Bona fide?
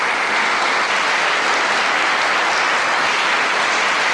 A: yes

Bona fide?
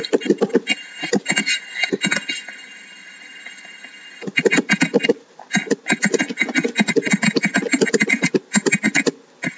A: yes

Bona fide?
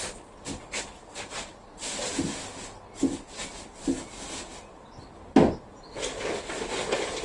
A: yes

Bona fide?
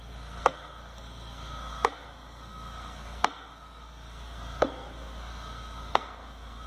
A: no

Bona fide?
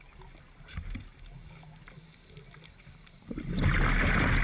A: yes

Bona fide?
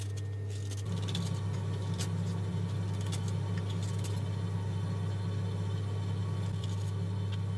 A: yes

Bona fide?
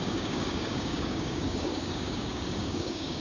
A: no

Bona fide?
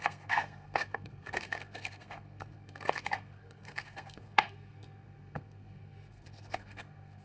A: no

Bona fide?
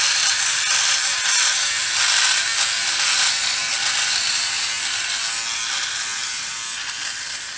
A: yes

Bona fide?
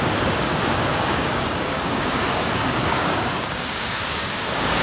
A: no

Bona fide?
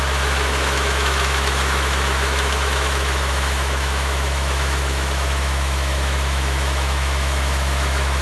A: no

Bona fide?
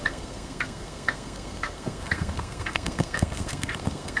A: no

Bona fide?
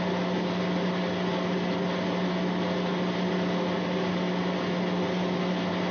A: yes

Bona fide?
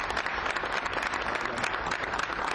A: yes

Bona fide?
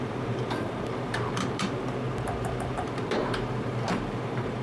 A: no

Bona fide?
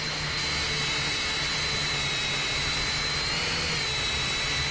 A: yes